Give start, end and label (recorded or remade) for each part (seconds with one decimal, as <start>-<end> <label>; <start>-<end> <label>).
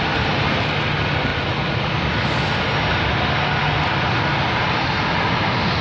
0.0-5.8 recorded